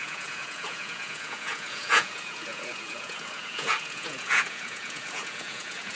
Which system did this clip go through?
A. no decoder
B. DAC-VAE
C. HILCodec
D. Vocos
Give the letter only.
D